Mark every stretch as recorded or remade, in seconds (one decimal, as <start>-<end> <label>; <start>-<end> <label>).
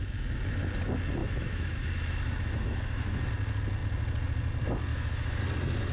0.0-1.2 recorded; 1.2-3.3 remade; 3.3-4.9 recorded; 4.9-5.4 remade; 5.4-5.9 recorded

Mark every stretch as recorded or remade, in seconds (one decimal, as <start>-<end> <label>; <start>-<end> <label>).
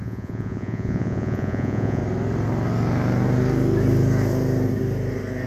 0.0-2.0 remade; 2.0-5.5 recorded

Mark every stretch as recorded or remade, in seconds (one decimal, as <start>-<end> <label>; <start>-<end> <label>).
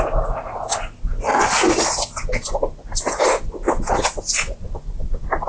0.0-1.3 recorded; 1.3-1.9 remade; 1.9-5.5 recorded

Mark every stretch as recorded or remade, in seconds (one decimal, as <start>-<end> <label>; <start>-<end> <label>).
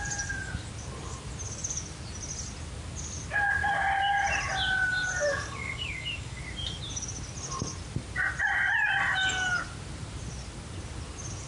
0.0-5.3 recorded; 5.3-6.4 remade; 6.4-11.5 recorded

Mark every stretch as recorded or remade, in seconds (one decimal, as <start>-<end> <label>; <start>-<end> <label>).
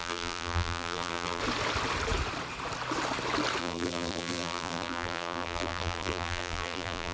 0.0-1.4 remade; 1.4-3.6 recorded; 3.6-7.1 remade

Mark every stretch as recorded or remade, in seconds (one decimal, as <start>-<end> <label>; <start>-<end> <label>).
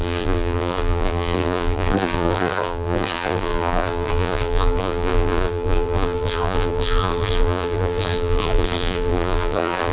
0.0-9.9 remade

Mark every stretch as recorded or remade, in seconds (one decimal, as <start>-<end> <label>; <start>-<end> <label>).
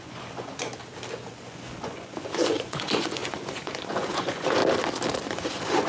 0.0-0.7 remade; 0.7-1.3 recorded; 1.3-4.6 remade; 4.6-5.2 recorded; 5.2-5.9 remade